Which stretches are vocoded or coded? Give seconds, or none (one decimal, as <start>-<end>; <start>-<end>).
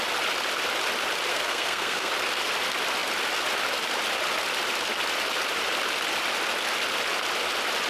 1.3-2.1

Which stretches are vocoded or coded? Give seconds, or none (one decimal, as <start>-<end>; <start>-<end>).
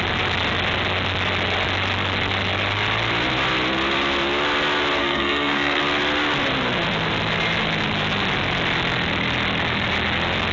5.0-5.8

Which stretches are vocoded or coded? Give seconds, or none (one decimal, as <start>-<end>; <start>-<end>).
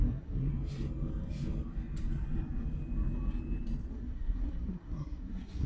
0.0-0.5; 3.9-5.7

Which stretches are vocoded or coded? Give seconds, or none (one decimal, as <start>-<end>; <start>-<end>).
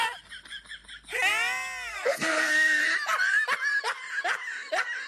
1.9-2.8